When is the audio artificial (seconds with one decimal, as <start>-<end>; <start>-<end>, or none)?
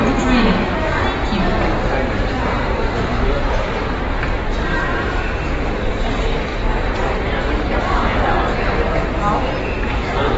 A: 2.4-5.1; 6.5-7.5